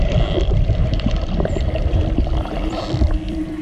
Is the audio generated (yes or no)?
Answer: yes